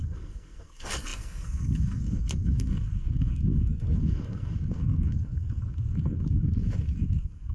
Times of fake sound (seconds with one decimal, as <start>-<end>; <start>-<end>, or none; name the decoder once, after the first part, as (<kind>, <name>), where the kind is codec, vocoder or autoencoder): 0.0-7.5 (codec, SNAC)